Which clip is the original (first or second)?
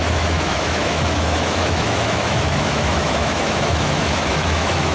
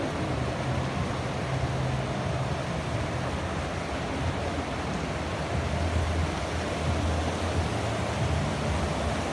second